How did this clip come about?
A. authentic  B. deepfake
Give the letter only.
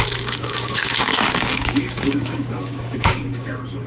B